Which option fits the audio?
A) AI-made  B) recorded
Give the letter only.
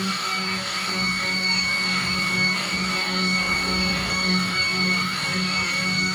A